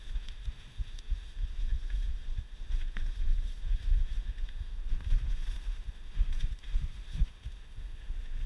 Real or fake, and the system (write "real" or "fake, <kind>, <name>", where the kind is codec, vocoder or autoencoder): fake, autoencoder, DAC-VAE